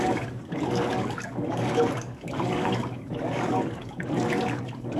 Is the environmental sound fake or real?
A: fake